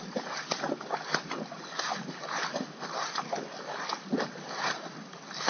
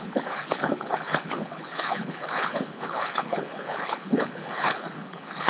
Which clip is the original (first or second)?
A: first